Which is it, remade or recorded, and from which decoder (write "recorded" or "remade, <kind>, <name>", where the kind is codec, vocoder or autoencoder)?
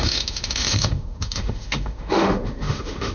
remade, autoencoder, DAC-VAE